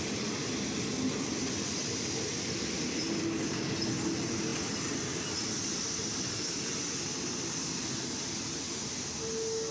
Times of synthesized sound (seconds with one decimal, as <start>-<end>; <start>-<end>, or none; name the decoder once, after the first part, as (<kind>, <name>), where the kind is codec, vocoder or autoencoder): none